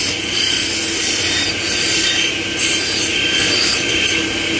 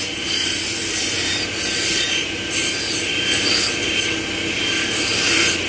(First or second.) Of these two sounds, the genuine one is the second